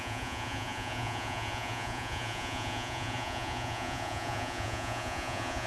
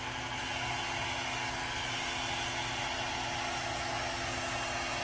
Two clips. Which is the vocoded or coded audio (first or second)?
first